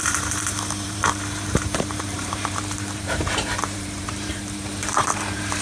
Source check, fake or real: fake